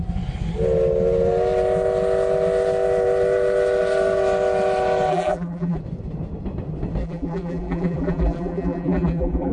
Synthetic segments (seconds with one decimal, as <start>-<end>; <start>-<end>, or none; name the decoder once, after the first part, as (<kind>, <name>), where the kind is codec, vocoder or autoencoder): 5.1-5.8 (vocoder, BigVGAN v2); 7.0-9.5